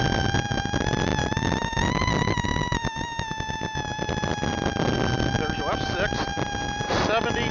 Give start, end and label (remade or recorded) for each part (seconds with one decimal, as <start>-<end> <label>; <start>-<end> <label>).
0.0-7.5 recorded